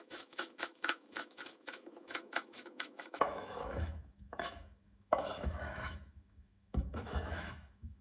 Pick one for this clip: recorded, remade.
remade